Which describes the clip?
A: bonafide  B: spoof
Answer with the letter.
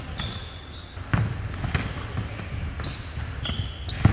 A